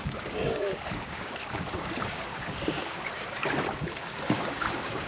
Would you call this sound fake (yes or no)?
yes